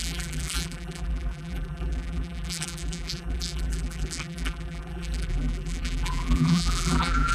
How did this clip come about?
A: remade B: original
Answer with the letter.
A